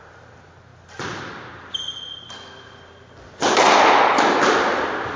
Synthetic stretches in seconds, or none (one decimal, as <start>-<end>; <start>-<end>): none